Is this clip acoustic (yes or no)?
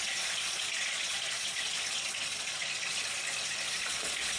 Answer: no